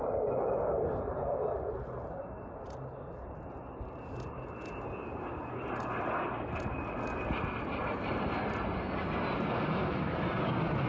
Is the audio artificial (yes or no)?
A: no